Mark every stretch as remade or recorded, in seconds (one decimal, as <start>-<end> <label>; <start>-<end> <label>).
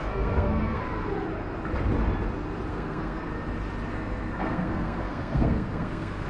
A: 0.0-0.8 remade; 0.8-2.7 recorded; 2.7-3.3 remade; 3.3-3.9 recorded; 3.9-6.3 remade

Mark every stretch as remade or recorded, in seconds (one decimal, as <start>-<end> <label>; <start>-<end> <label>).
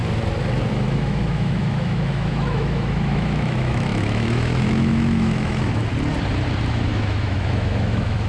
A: 0.0-0.7 recorded; 0.7-5.8 remade; 5.8-6.7 recorded; 6.7-8.3 remade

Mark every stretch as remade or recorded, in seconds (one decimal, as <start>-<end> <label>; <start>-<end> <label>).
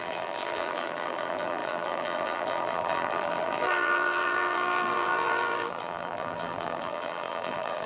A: 0.0-7.9 remade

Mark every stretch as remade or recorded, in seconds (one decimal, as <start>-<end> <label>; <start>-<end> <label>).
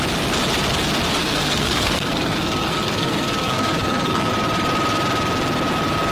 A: 0.0-1.2 recorded; 1.2-4.3 remade; 4.3-6.1 recorded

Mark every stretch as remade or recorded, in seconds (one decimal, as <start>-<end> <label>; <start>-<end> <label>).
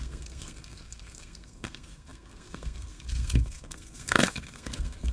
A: 0.0-5.1 remade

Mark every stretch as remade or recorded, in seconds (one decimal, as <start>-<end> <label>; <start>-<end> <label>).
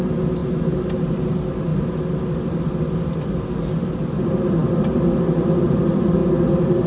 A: 0.0-6.9 recorded